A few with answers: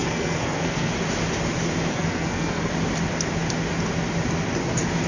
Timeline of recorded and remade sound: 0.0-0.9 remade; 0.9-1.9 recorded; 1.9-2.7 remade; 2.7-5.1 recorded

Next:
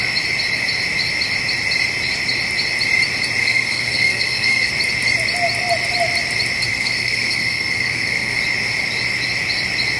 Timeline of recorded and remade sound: 0.0-3.4 recorded; 3.4-4.7 remade; 4.7-6.7 recorded; 6.7-8.4 remade; 8.4-10.0 recorded

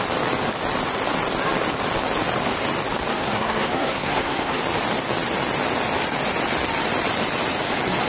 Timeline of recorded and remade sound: 0.0-3.1 recorded; 3.1-4.6 remade; 4.6-8.1 recorded

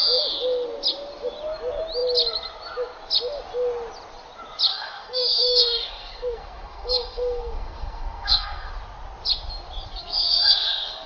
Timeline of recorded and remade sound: 0.0-4.7 recorded; 4.7-8.7 remade; 8.7-9.9 recorded; 9.9-11.1 remade

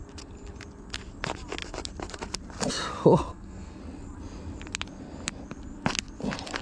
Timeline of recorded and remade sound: 0.0-3.3 recorded; 3.3-3.8 remade; 3.8-6.6 recorded

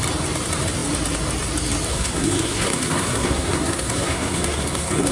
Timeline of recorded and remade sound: 0.0-1.9 recorded; 1.9-5.1 remade

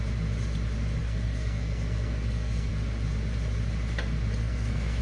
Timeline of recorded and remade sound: 0.0-1.0 recorded; 1.0-2.7 remade; 2.7-4.4 recorded; 4.4-5.0 remade